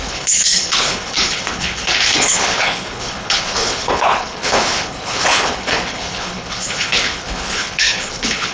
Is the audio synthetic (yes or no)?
yes